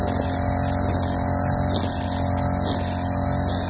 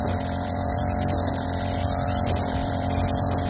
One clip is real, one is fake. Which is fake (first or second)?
second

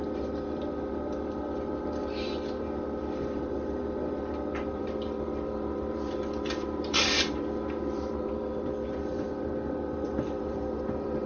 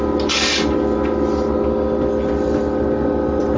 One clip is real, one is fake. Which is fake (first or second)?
first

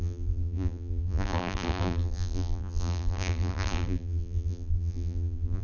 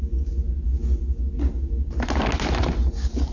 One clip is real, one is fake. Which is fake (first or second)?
first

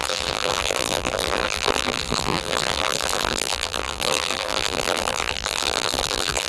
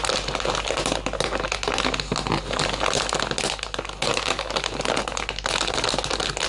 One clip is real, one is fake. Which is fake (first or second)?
first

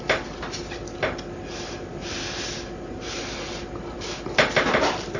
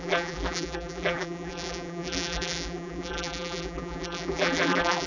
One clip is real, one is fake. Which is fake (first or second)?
second